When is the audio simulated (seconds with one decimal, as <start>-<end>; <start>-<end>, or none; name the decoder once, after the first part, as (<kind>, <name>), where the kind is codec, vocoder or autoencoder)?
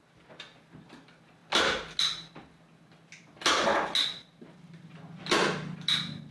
none